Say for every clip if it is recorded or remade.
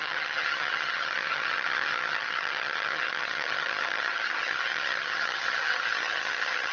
remade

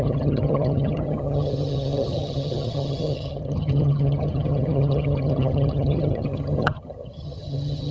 remade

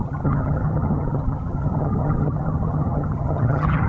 remade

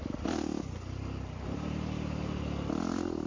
recorded